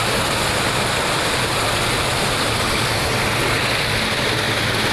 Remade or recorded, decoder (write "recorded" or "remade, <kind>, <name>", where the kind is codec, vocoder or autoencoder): recorded